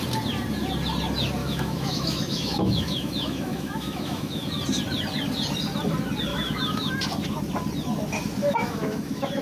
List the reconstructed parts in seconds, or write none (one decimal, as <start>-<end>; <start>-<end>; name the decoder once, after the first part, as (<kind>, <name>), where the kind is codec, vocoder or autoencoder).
1.4-4.5 (autoencoder, DAC-VAE); 6.3-6.9; 8.4-9.4